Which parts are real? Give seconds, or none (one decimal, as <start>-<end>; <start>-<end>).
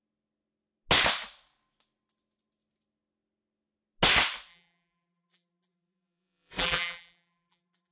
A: 0.0-4.5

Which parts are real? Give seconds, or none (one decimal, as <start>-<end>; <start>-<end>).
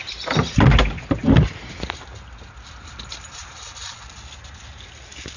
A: 0.0-5.4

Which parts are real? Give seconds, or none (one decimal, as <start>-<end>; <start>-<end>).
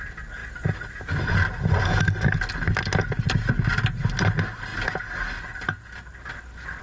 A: 0.0-6.8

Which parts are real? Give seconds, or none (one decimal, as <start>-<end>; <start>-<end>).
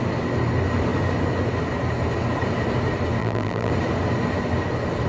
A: 0.0-3.2; 3.7-5.1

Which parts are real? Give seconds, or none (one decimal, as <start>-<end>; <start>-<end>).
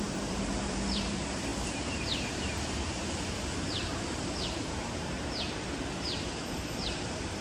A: none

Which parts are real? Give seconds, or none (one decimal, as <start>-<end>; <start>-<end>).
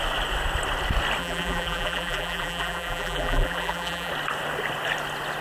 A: 0.0-1.2; 4.1-5.4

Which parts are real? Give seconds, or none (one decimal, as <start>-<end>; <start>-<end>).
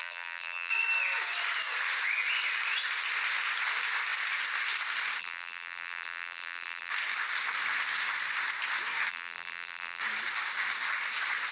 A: 0.7-5.2; 6.9-9.1; 10.0-11.5